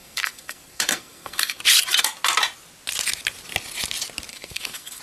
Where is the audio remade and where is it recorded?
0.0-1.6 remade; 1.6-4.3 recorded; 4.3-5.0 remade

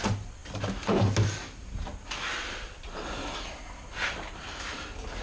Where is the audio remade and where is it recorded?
0.0-5.2 recorded

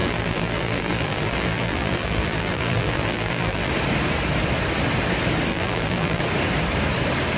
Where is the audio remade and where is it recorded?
0.0-3.7 remade; 3.7-5.5 recorded; 5.5-6.2 remade; 6.2-7.4 recorded

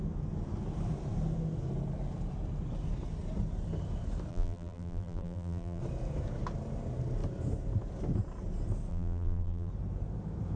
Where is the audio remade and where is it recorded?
0.0-4.3 recorded; 4.3-5.8 remade; 5.8-8.9 recorded; 8.9-9.7 remade; 9.7-10.6 recorded

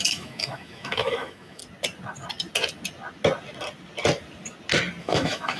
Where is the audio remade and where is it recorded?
0.0-1.6 remade; 1.6-5.0 recorded; 5.0-5.6 remade

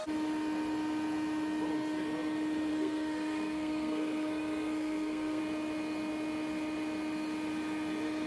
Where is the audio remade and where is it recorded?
0.0-2.7 recorded; 2.7-5.4 remade; 5.4-8.3 recorded

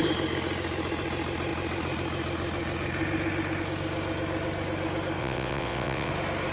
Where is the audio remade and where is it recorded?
0.0-5.2 recorded; 5.2-6.1 remade; 6.1-6.5 recorded

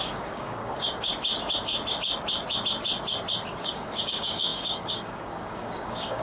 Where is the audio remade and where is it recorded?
0.0-1.1 remade; 1.1-3.5 recorded; 3.5-6.2 remade